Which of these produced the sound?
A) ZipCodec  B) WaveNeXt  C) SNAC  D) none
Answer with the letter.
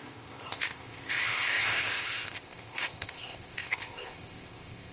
A